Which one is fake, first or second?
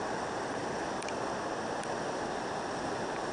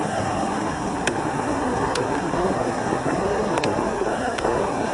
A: second